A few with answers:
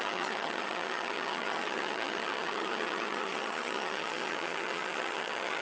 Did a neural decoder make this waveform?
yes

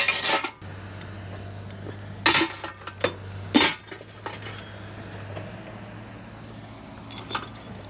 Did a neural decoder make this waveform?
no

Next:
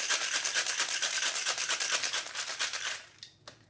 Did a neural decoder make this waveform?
no